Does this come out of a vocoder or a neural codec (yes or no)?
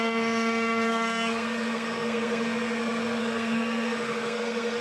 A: yes